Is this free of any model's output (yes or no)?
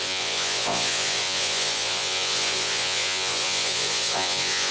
no